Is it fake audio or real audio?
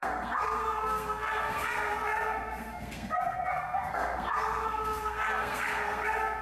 fake